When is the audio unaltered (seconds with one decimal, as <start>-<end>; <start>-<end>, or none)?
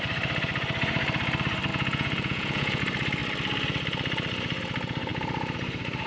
0.0-1.7; 2.8-6.1